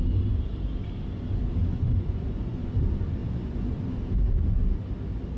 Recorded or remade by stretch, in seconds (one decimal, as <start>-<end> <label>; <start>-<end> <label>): 0.0-1.6 recorded; 1.6-2.7 remade; 2.7-3.2 recorded; 3.2-4.0 remade; 4.0-5.4 recorded